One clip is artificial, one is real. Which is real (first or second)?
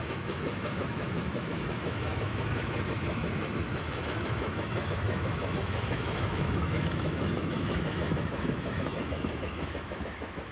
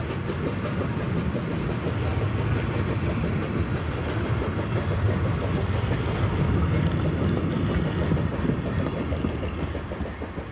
second